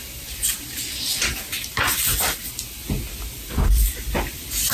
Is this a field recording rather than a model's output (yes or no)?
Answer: yes